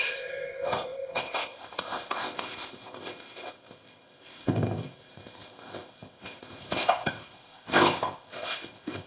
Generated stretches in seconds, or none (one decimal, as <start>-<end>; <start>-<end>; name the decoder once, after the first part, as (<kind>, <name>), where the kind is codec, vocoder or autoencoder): 0.0-9.1 (codec, ZipCodec)